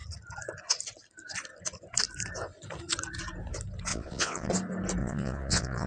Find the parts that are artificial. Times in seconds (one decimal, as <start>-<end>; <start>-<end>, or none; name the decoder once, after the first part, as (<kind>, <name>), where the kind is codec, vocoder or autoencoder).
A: 3.9-4.5 (vocoder, Vocos); 5.0-5.9